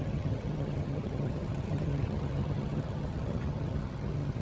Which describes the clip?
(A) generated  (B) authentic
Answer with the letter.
A